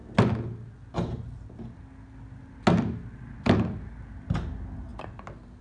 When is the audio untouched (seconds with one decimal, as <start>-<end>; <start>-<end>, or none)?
0.0-5.6